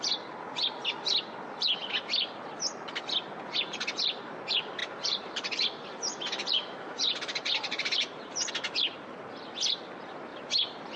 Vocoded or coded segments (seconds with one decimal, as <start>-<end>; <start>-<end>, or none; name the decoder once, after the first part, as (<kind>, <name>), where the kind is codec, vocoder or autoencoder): 4.8-8.5 (vocoder, BigVGAN v2); 10.3-11.0